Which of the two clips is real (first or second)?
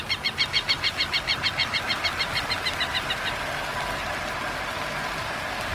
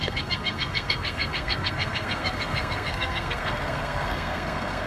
first